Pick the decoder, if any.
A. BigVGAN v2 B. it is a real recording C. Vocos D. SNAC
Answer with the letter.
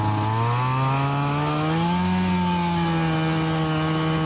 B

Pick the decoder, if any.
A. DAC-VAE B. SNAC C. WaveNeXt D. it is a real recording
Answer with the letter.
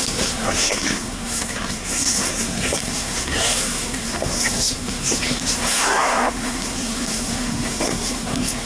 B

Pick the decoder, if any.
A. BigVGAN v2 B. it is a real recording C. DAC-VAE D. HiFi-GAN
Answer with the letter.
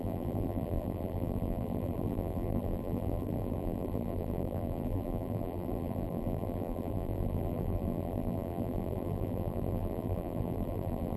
A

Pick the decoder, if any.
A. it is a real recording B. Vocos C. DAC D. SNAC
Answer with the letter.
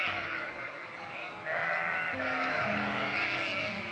C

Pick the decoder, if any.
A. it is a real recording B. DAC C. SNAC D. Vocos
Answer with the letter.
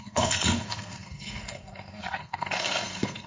C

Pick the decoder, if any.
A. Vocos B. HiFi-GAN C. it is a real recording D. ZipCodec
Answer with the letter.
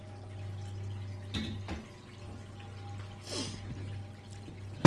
C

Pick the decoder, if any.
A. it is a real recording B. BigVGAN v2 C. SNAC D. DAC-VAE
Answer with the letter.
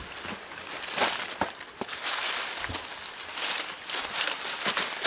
A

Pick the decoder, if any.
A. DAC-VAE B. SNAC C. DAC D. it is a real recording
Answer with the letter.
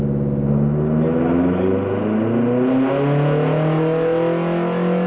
D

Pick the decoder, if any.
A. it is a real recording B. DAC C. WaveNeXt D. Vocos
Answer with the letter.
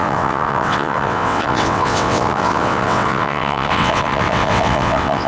C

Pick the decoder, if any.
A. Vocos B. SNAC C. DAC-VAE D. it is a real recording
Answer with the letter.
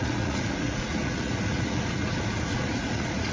A